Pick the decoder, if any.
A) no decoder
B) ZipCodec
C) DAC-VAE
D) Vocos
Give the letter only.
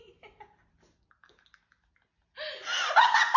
A